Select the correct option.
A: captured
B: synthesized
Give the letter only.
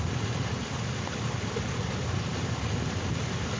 A